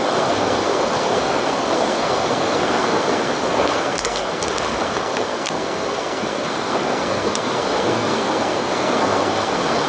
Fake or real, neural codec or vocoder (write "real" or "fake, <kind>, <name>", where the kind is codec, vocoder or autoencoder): fake, codec, SNAC